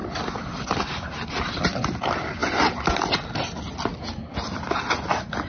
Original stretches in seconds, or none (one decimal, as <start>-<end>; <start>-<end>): 0.0-5.5

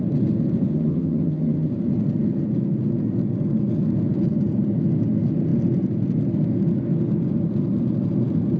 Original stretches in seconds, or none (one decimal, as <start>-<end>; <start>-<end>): 0.0-0.7; 1.7-8.6

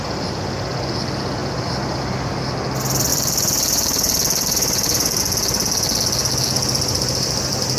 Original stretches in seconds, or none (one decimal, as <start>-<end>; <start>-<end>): 0.0-1.4; 2.3-3.1; 5.2-7.8

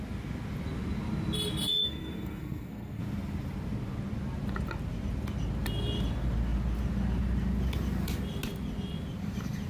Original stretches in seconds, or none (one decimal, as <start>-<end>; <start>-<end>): 0.0-1.8; 3.0-9.7

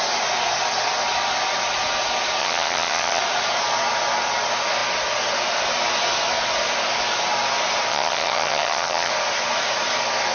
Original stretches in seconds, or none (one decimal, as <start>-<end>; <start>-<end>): 0.0-2.4; 3.2-7.9; 9.1-10.3